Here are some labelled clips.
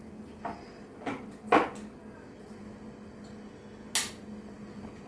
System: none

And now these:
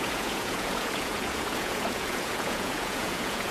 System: vocoder, Vocos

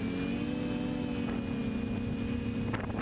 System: none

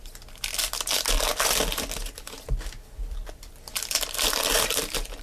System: none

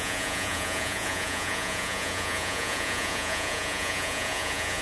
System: vocoder, Vocos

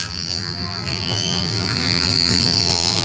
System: vocoder, BigVGAN v2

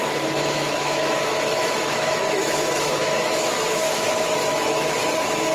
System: autoencoder, DAC-VAE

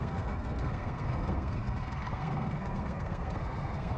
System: codec, SNAC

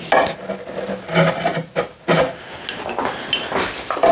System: none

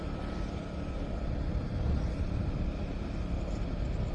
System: none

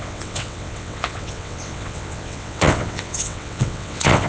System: vocoder, WaveNeXt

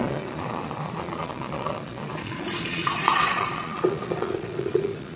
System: vocoder, Vocos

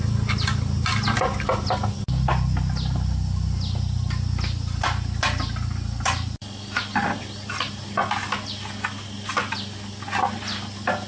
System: none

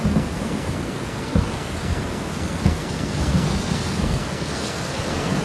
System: codec, SNAC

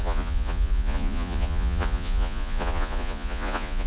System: vocoder, Vocos